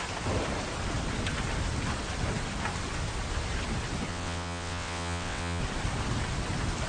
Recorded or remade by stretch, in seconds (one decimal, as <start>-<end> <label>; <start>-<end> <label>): 0.0-4.1 recorded; 4.1-5.6 remade; 5.6-6.9 recorded